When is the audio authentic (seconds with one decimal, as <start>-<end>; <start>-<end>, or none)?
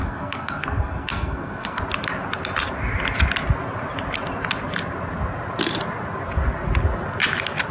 1.8-7.7